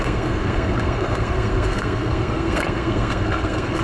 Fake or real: fake